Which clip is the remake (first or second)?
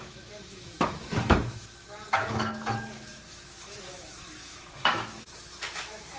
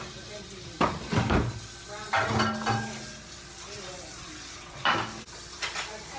first